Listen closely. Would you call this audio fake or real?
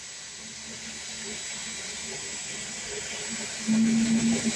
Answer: real